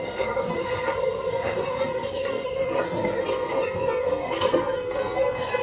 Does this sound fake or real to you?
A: fake